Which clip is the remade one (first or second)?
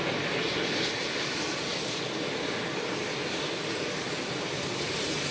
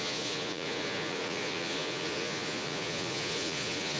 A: second